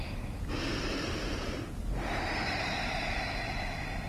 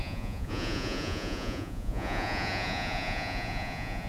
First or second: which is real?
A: first